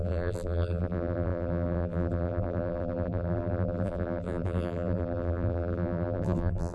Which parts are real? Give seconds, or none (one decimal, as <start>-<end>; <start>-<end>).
none